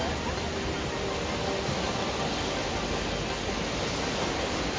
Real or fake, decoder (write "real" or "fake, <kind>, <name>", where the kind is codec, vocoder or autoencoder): real